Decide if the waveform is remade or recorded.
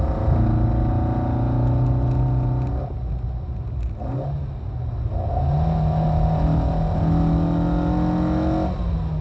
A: recorded